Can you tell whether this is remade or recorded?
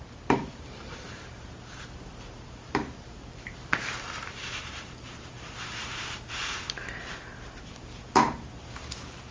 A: remade